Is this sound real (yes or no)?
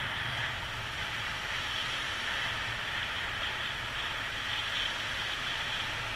yes